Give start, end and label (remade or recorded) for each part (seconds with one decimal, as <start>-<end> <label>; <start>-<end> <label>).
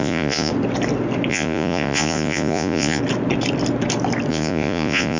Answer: 0.0-0.5 remade; 0.5-1.3 recorded; 1.3-3.0 remade; 3.0-4.3 recorded; 4.3-5.2 remade